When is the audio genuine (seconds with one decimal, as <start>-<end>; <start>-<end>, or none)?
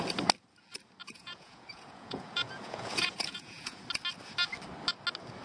0.0-1.0; 3.8-5.4